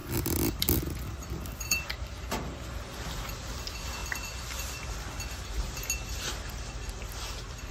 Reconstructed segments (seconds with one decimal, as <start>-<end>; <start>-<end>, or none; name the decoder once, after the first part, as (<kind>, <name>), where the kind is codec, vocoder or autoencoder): 0.0-2.8 (vocoder, BigVGAN v2)